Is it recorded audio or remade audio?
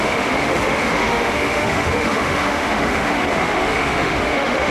remade